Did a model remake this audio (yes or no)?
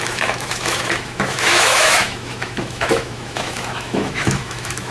yes